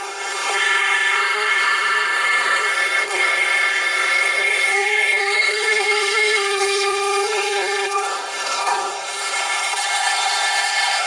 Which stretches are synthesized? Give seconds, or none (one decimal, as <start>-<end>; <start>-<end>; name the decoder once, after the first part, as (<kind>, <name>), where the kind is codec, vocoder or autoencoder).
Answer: 0.0-11.1 (codec, SNAC)